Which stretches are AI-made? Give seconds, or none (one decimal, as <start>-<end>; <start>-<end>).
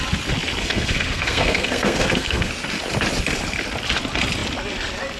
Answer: 0.6-2.5